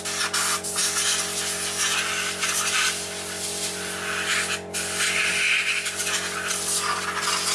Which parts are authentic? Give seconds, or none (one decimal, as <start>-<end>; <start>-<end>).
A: 0.0-7.5